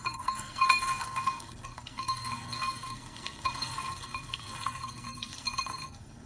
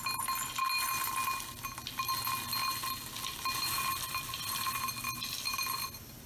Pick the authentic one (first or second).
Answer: second